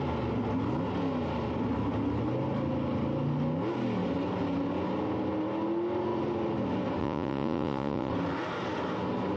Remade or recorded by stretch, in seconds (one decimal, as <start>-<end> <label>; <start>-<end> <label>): 0.0-7.0 recorded; 7.0-8.1 remade; 8.1-9.4 recorded